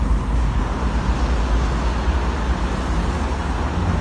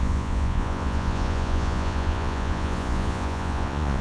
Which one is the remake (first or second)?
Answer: second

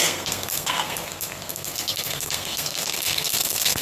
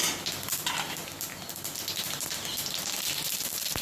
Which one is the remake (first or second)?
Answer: first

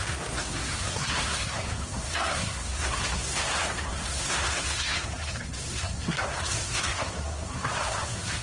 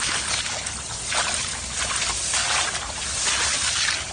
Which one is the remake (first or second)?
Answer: first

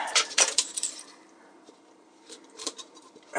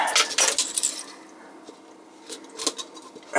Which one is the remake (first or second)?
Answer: first